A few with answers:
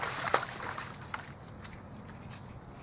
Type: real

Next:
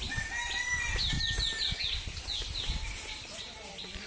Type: real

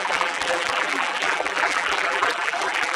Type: fake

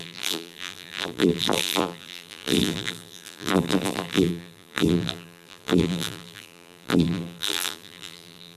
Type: fake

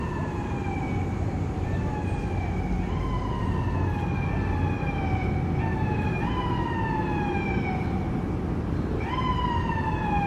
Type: real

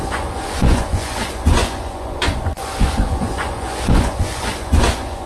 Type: fake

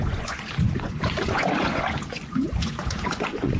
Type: fake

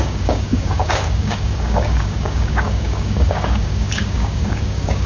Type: fake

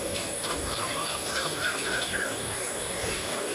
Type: fake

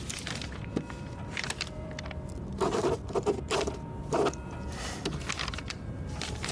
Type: fake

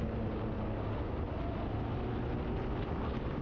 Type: real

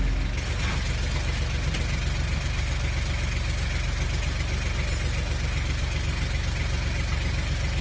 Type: real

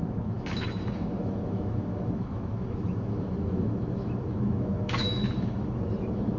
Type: fake